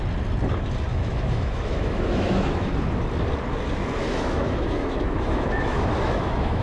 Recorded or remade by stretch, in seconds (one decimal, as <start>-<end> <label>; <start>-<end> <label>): 0.0-0.9 recorded; 0.9-2.7 remade; 2.7-3.8 recorded; 3.8-6.6 remade